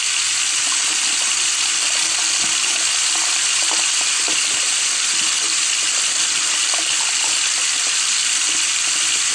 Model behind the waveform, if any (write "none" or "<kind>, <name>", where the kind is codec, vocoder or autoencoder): none